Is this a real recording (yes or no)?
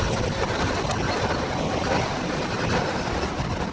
yes